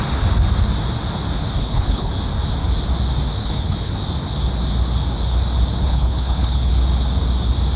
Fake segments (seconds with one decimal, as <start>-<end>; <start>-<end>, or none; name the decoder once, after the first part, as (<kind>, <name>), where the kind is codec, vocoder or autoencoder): 1.6-2.1 (codec, HILCodec); 3.4-3.9; 5.8-6.7